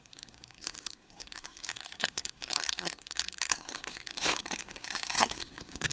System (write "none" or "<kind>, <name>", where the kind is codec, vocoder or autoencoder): codec, SNAC